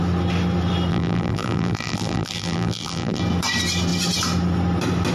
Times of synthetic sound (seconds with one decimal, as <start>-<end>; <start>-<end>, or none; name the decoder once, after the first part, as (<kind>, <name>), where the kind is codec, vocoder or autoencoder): 0.9-3.2 (vocoder, BigVGAN v2)

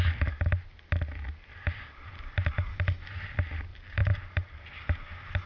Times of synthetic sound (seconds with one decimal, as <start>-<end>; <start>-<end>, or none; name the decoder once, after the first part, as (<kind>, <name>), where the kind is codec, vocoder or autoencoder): 3.7-5.1 (vocoder, BigVGAN v2)

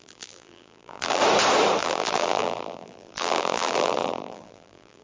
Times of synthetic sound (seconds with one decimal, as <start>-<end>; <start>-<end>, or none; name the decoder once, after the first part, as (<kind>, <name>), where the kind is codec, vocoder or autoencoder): 0.0-1.2 (vocoder, BigVGAN v2); 1.8-5.0

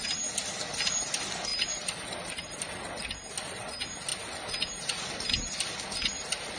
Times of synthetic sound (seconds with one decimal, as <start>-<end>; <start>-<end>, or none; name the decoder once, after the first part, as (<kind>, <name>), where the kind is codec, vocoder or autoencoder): 1.5-2.6 (vocoder, BigVGAN v2)

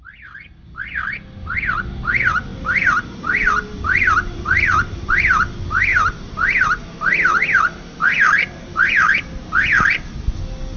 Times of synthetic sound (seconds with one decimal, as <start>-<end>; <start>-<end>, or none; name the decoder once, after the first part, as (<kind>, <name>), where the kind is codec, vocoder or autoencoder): 2.5-5.1 (vocoder, BigVGAN v2); 5.9-6.8

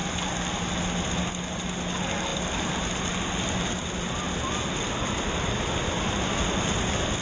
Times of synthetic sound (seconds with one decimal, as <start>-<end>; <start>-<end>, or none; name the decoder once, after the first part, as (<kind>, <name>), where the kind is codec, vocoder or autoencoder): none

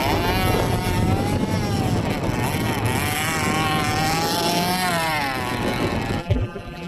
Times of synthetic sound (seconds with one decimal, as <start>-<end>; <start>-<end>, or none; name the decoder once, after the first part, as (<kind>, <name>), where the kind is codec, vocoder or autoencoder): 6.2-6.9 (vocoder, BigVGAN v2)

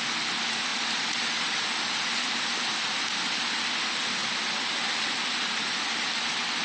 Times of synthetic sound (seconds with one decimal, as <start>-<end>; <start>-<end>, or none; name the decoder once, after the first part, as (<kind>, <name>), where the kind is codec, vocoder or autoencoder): 0.7-2.6 (vocoder, BigVGAN v2); 4.2-6.6